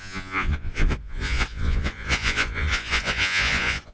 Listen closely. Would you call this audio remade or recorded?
remade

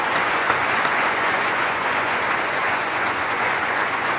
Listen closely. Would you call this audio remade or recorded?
remade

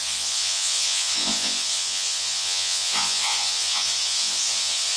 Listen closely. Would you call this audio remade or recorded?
remade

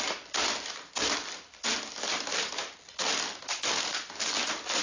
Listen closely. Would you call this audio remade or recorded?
recorded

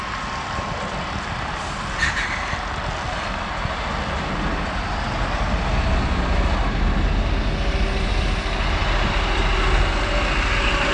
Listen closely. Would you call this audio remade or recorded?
recorded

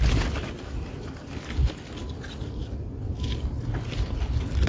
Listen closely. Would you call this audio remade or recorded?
recorded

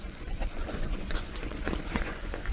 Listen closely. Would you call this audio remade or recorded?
remade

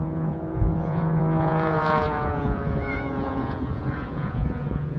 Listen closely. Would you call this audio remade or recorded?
remade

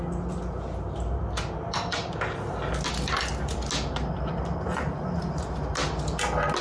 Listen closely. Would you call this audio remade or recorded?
recorded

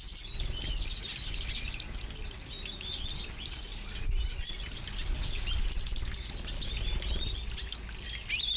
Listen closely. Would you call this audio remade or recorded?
recorded